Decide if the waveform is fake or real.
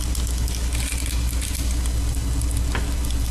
real